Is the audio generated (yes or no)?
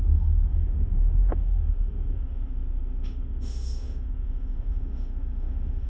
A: yes